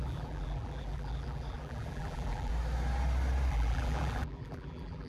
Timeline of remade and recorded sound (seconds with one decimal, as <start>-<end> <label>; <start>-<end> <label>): 0.0-2.5 remade; 2.5-3.5 recorded; 3.5-5.1 remade